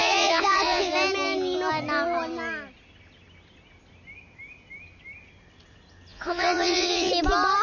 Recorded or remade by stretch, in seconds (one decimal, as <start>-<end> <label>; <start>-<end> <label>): 0.0-0.9 remade; 0.9-6.1 recorded; 6.1-7.1 remade; 7.1-7.6 recorded